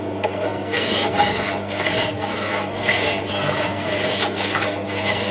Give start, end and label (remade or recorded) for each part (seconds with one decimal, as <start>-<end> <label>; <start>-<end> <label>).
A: 0.0-5.3 remade